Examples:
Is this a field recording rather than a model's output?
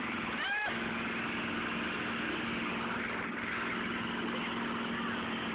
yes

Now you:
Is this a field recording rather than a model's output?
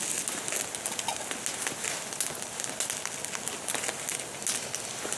yes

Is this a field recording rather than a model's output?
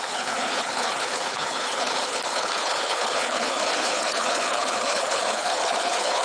no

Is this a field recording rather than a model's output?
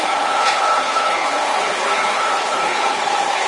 no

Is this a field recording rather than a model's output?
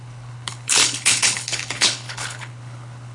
no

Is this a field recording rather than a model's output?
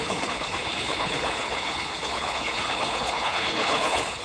no